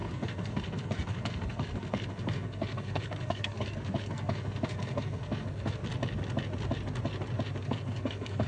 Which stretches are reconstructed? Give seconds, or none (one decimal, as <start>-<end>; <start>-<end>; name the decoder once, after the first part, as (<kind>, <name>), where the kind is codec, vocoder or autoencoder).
0.0-5.8 (codec, SNAC); 7.6-8.5